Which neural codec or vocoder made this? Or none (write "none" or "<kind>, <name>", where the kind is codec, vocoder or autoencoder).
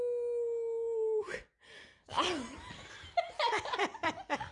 none